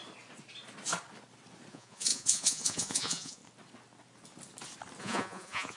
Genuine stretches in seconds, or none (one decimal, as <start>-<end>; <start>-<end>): 0.0-1.7; 3.4-5.0